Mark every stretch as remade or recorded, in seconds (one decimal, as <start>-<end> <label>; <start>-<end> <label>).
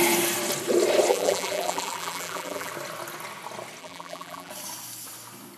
0.0-1.1 recorded; 1.1-2.7 remade; 2.7-3.8 recorded; 3.8-4.5 remade; 4.5-5.6 recorded